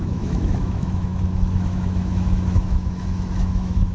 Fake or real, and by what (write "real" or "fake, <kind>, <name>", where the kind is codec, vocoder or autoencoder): fake, autoencoder, DAC-VAE